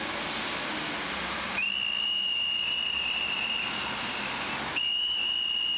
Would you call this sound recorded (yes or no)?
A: yes